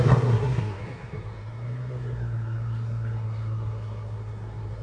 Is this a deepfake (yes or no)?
yes